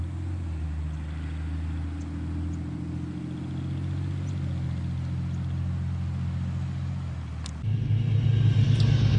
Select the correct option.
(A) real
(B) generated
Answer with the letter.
A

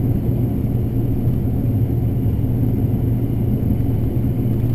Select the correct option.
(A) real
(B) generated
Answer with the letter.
A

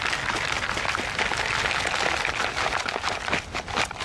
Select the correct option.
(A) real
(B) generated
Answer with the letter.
A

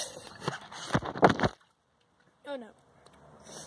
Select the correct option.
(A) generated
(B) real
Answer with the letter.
B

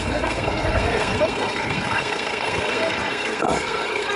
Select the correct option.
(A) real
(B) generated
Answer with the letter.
B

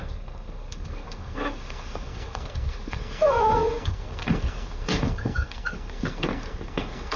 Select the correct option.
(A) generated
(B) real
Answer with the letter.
A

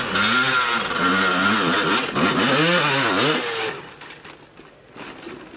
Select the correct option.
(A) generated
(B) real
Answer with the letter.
B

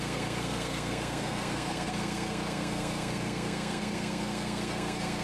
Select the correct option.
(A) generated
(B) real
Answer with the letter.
A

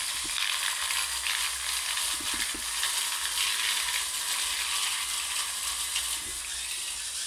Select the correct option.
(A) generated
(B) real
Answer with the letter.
B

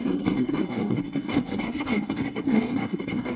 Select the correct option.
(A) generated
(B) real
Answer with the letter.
A